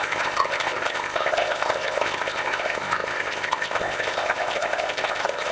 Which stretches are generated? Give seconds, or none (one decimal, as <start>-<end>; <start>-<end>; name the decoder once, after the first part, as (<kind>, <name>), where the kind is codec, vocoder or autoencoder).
0.0-5.5 (codec, ZipCodec)